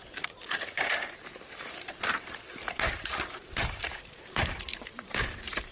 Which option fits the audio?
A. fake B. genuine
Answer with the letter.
A